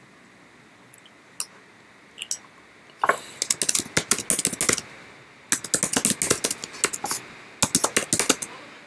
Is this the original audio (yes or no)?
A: yes